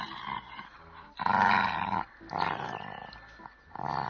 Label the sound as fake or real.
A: real